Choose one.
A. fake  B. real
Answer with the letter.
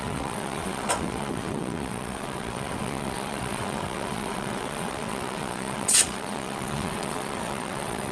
A